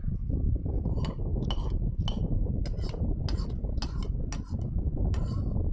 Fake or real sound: real